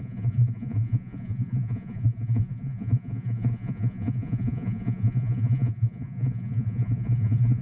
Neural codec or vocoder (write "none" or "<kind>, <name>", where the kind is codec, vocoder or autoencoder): vocoder, Vocos